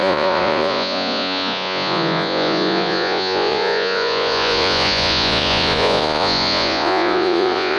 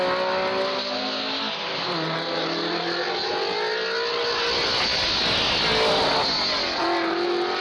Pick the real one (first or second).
second